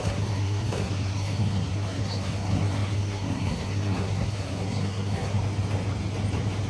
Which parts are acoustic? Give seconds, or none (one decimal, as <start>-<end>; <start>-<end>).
5.4-6.7